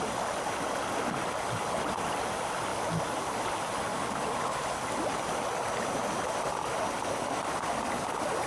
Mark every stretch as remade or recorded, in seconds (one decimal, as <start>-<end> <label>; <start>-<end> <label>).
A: 0.0-8.5 recorded